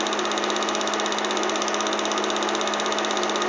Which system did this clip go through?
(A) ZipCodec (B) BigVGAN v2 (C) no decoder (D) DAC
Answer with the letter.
C